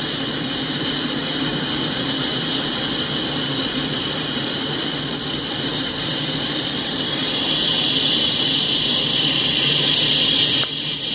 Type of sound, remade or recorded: remade